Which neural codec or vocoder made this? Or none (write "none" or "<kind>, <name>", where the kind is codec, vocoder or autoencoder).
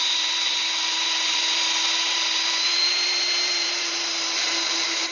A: vocoder, BigVGAN v2